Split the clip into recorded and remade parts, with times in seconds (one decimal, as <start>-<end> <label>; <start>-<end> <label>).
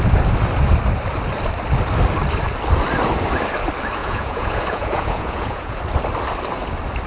0.0-4.0 recorded; 4.0-5.8 remade; 5.8-7.1 recorded